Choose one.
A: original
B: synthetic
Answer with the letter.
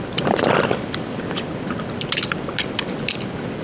A